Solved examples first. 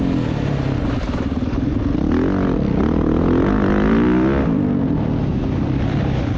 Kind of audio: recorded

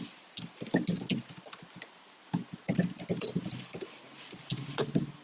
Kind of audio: recorded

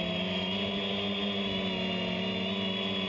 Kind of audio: recorded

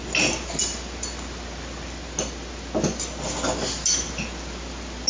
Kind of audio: recorded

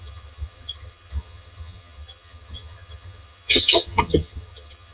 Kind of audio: remade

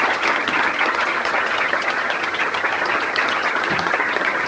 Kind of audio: remade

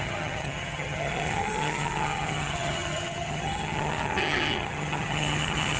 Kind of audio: remade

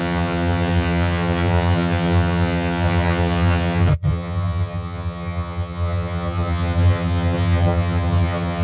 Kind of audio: remade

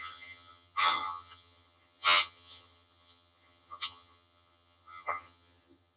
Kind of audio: remade